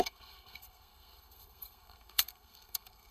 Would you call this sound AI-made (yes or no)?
yes